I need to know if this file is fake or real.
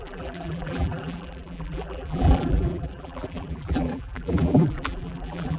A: fake